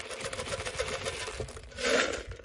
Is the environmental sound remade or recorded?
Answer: recorded